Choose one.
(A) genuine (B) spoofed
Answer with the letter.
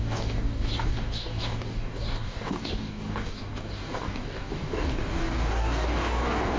B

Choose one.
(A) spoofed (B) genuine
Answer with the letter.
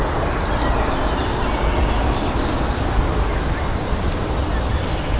B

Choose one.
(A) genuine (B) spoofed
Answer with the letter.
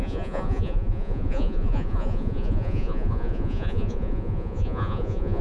B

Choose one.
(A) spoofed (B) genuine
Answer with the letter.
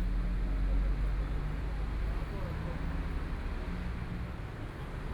B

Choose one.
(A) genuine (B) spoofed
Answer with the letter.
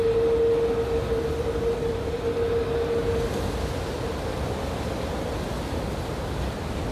A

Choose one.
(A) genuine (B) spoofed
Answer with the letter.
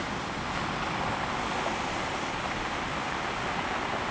A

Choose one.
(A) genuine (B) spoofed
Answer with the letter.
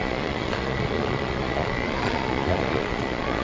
B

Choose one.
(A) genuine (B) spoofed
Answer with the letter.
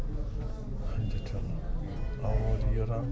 A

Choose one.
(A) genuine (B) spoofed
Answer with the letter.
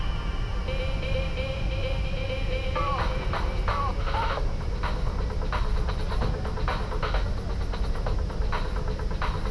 A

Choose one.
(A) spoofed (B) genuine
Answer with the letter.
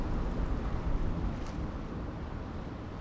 B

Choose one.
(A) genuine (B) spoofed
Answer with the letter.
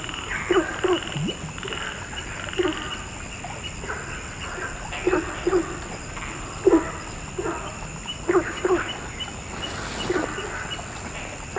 A